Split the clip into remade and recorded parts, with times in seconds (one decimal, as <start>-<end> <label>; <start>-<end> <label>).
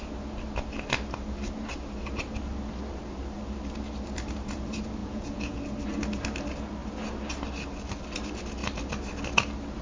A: 0.0-5.0 recorded; 5.0-5.6 remade; 5.6-9.8 recorded